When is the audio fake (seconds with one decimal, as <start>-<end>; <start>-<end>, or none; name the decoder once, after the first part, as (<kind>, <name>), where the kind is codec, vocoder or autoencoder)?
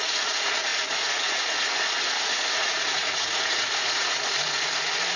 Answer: 0.0-5.2 (vocoder, Vocos)